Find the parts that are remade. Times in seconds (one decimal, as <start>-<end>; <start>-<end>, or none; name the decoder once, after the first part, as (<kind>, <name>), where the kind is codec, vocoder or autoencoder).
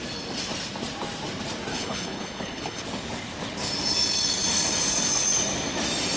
1.7-2.8 (codec, HILCodec)